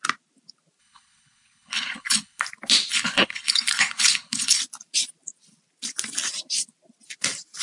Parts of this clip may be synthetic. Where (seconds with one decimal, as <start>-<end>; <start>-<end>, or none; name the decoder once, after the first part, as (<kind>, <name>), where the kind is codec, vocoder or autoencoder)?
0.8-2.4 (codec, HILCodec); 2.9-4.6